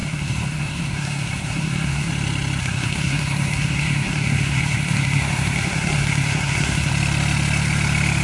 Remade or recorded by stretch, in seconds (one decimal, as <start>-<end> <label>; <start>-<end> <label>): 0.0-2.1 remade; 2.1-2.6 recorded; 2.6-6.9 remade; 6.9-8.2 recorded